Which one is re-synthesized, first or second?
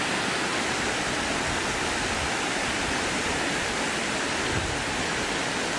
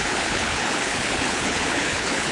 second